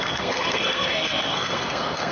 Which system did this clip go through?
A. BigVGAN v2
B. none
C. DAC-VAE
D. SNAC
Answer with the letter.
D